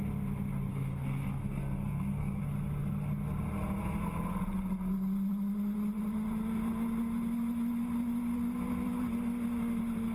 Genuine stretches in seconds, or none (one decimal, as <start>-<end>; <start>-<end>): 0.0-0.7; 2.4-10.1